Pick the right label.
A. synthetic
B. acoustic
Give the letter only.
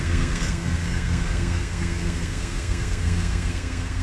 A